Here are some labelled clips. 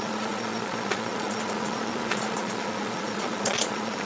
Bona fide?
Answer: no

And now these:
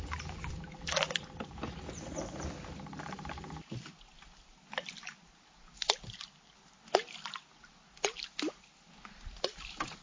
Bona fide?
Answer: yes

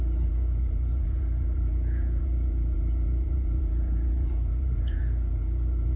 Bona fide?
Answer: no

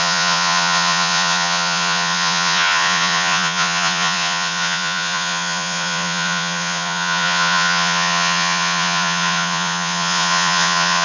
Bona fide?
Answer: no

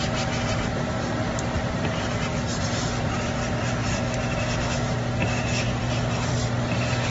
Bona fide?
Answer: yes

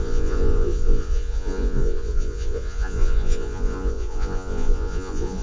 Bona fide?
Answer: no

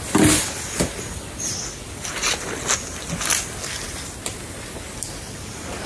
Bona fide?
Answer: yes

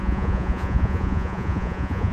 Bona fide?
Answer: no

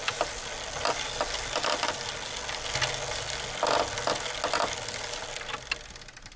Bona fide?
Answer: yes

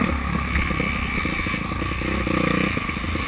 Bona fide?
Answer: yes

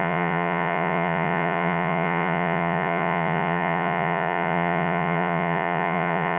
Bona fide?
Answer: no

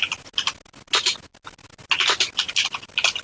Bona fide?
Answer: yes